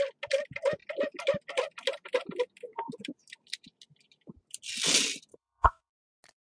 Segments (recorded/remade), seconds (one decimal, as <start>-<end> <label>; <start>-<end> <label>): 0.0-5.3 recorded; 5.3-5.9 remade; 5.9-6.5 recorded